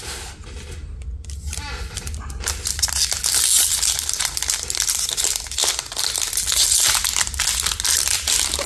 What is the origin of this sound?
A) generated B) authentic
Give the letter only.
B